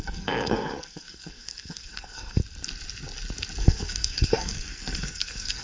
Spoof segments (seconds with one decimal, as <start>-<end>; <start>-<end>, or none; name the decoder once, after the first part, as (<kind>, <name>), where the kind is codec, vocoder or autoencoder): 0.0-2.4 (codec, SNAC); 3.6-5.6